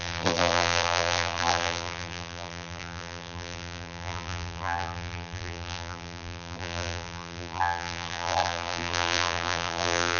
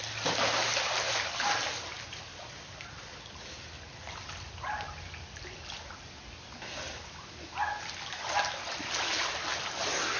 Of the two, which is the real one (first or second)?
second